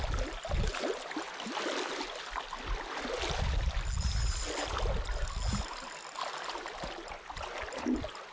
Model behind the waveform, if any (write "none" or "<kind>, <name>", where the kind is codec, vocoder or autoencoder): none